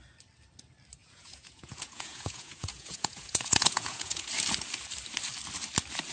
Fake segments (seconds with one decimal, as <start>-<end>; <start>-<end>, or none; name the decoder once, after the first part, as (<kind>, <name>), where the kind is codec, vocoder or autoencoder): 1.0-4.3 (vocoder, Vocos)